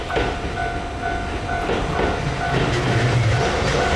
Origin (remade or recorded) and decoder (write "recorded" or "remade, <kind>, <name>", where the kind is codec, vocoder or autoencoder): recorded